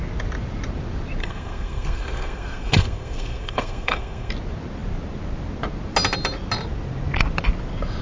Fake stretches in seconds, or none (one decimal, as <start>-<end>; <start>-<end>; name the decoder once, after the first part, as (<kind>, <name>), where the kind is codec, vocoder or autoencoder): 1.2-4.3 (codec, SNAC)